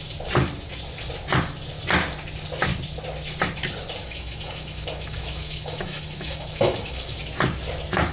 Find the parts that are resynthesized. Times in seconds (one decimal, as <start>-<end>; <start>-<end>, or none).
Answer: 4.0-7.2